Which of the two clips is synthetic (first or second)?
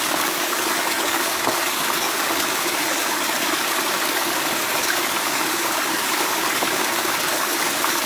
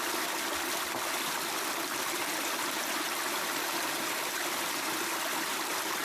first